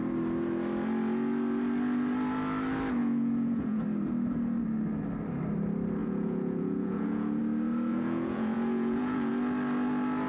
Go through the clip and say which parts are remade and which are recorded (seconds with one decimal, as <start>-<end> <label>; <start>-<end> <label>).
0.0-3.0 recorded; 3.0-3.8 remade; 3.8-6.0 recorded; 6.0-7.4 remade; 7.4-7.9 recorded; 7.9-9.3 remade; 9.3-10.3 recorded